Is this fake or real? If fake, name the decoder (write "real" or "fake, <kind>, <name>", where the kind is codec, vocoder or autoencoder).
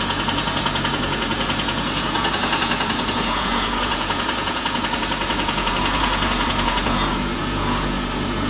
fake, vocoder, Vocos